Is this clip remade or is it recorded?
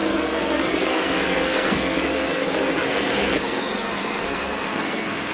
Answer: remade